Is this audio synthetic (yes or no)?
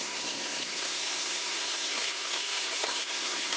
yes